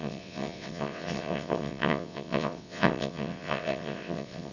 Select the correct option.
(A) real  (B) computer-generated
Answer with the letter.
B